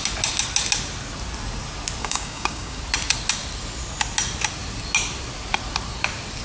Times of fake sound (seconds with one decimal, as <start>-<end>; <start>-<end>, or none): 2.0-2.8